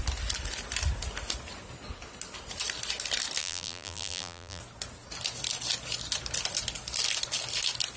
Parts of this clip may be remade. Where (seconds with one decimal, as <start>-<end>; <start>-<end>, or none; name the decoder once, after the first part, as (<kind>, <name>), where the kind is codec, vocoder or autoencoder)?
3.4-4.6 (vocoder, BigVGAN v2)

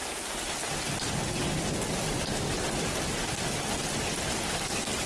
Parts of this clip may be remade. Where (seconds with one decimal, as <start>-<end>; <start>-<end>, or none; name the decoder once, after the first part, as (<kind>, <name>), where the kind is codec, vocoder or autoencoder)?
none